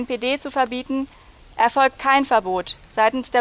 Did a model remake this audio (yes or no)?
no